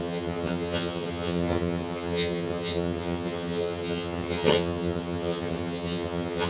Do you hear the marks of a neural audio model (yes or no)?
yes